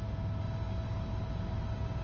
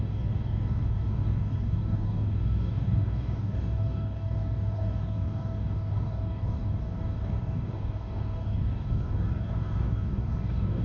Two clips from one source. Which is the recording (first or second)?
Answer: first